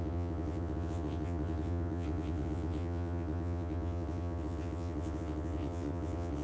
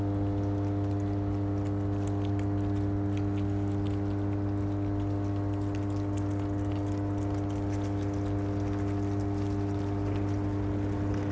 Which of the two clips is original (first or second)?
second